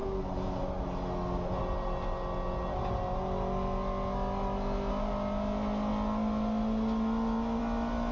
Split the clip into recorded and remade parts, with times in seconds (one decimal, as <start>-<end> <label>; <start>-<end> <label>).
0.0-8.1 recorded